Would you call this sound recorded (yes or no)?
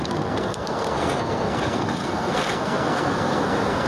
no